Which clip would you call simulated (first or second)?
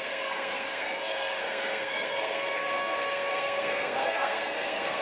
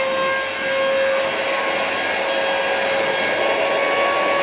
first